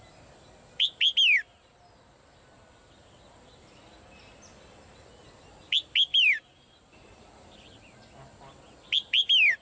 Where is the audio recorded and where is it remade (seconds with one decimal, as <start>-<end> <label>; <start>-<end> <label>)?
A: 0.0-6.1 recorded; 6.1-7.6 remade; 7.6-9.6 recorded